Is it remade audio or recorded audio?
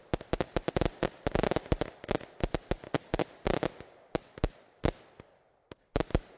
recorded